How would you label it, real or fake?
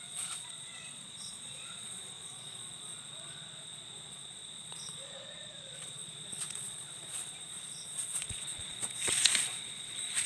fake